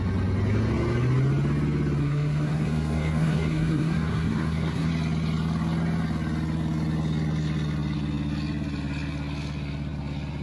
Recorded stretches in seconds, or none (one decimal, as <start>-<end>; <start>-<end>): 0.0-2.0; 4.9-10.4